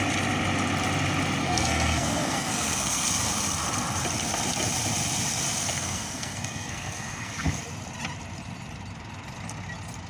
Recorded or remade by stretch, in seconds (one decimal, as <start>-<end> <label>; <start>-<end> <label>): 0.0-1.4 recorded; 1.4-3.1 remade; 3.1-5.6 recorded; 5.6-7.6 remade; 7.6-10.1 recorded